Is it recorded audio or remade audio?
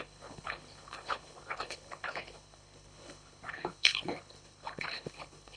remade